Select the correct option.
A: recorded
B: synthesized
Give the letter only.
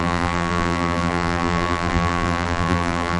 B